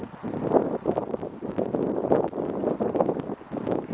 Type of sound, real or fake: real